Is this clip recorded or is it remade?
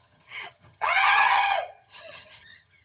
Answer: remade